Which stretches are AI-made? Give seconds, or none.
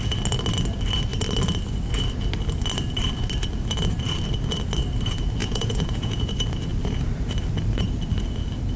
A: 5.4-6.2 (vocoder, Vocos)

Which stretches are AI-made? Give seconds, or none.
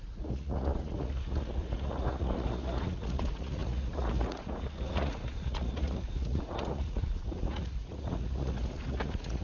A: 0.0-9.4 (vocoder, Vocos)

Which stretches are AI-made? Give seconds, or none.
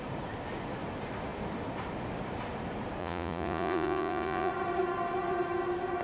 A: 3.0-4.5 (vocoder, Vocos)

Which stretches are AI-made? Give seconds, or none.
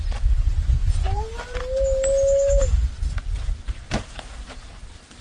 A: none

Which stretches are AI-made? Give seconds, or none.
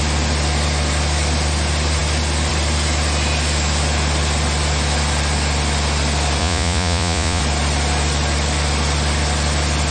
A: 6.4-7.4 (vocoder, Vocos)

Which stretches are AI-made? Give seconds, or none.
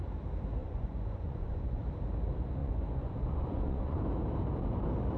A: 0.6-1.8 (vocoder, Vocos); 2.6-4.0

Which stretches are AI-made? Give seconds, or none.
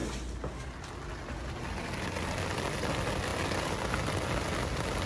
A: none